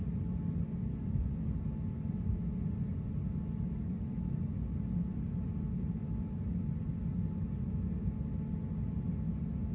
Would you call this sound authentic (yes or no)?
yes